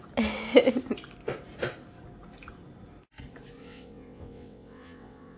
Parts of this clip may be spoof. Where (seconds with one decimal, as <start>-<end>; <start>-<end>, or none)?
3.6-5.4